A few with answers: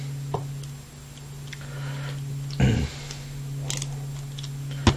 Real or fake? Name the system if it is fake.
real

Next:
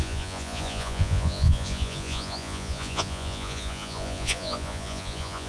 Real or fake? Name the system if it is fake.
fake, vocoder, Vocos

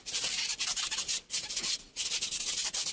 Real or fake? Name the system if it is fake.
real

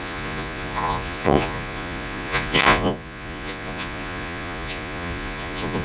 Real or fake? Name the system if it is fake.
fake, vocoder, Vocos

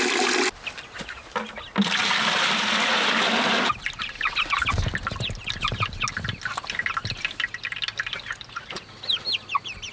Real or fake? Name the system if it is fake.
real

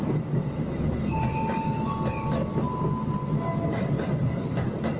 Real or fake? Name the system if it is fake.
real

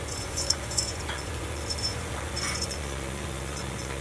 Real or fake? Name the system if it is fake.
fake, vocoder, Vocos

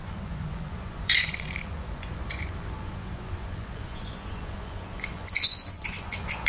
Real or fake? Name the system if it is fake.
fake, vocoder, Vocos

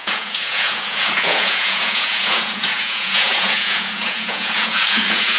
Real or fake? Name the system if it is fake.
fake, vocoder, Vocos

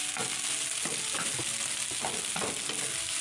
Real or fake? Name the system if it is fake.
real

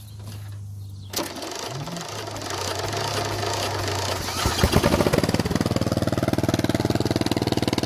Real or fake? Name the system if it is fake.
real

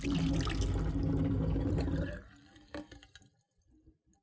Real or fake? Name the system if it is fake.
real